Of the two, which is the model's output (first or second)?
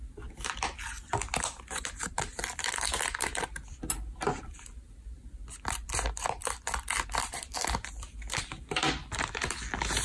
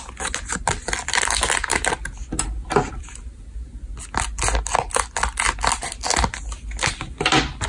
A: first